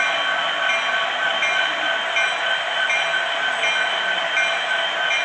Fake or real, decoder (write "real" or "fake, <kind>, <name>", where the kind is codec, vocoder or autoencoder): real